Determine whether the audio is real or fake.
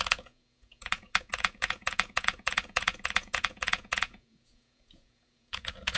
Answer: fake